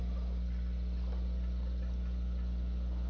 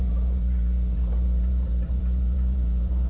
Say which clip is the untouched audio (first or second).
first